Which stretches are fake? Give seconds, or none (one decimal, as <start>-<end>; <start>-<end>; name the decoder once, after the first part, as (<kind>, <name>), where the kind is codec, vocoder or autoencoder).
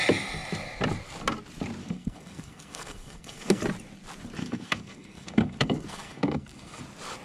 1.8-3.6 (codec, SNAC); 4.4-6.8